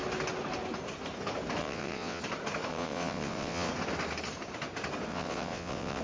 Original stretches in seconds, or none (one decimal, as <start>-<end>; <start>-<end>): 0.0-1.6; 2.2-2.7; 3.7-5.1